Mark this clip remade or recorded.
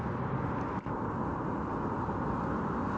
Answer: recorded